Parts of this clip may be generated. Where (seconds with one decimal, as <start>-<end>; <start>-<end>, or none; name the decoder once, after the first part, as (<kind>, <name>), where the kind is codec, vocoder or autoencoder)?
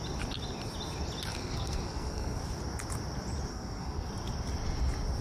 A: 1.4-2.4 (codec, SNAC); 3.5-4.1